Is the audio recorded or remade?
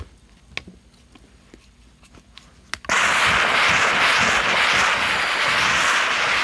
recorded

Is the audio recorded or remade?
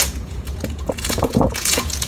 remade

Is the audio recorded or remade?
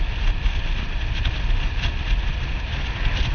recorded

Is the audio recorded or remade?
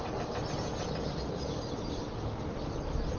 recorded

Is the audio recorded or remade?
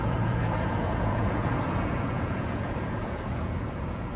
remade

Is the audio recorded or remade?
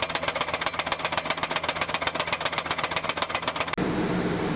recorded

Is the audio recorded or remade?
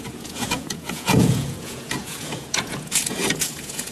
remade